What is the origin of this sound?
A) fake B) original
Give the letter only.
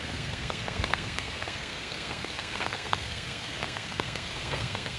A